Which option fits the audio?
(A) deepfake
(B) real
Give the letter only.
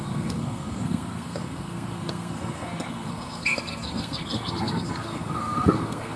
A